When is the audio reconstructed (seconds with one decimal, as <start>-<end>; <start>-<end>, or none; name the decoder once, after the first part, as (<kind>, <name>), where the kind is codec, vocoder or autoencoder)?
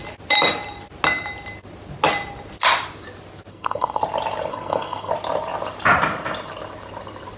3.5-4.0 (codec, SNAC); 4.5-5.1